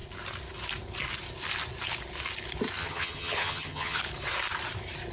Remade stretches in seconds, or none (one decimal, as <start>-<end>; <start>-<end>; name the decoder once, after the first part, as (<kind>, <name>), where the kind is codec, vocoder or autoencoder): 2.8-4.0 (vocoder, HiFi-GAN)